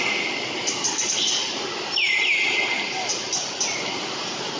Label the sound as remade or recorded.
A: recorded